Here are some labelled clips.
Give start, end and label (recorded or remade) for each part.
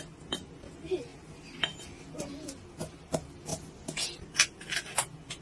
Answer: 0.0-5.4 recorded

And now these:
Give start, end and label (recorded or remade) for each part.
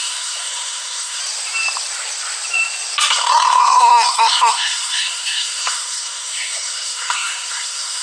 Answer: 0.0-1.2 remade; 1.2-3.1 recorded; 3.1-8.0 remade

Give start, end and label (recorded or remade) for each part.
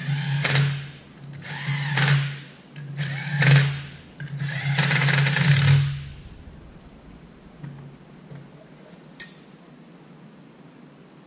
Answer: 0.0-11.3 recorded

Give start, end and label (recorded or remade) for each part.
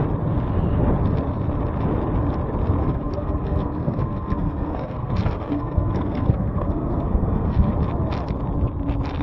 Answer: 0.0-2.8 recorded; 2.8-7.7 remade; 7.7-9.2 recorded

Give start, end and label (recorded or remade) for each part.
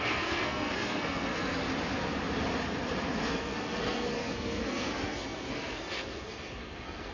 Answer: 0.0-1.6 remade; 1.6-3.3 recorded; 3.3-7.1 remade